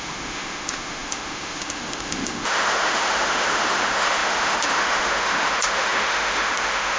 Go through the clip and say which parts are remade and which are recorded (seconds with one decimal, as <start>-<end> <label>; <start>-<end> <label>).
0.0-7.0 remade